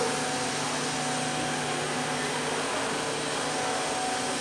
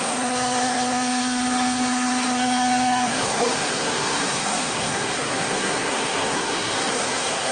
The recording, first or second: first